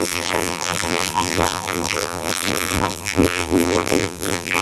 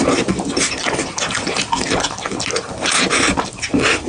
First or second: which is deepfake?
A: first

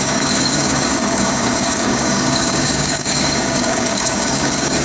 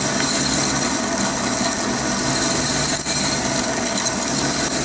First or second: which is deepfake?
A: first